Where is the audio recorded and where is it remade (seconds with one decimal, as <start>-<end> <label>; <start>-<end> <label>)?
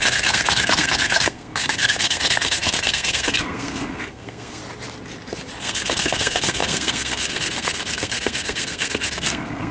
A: 0.0-4.6 remade; 4.6-5.6 recorded; 5.6-9.7 remade